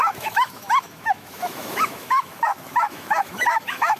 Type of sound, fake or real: fake